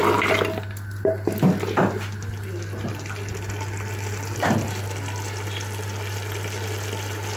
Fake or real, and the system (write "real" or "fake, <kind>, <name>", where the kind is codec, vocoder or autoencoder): real